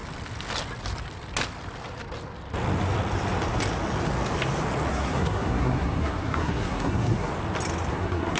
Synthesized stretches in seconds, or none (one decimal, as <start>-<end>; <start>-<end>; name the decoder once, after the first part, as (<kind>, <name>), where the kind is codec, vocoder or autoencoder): 4.9-7.3 (codec, SNAC); 7.9-8.4